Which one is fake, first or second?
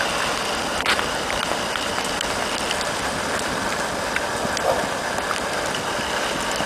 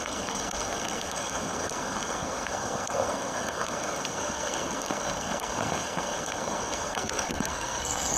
second